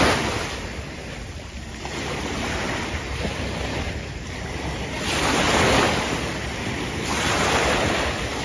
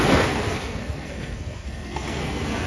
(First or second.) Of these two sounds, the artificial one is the second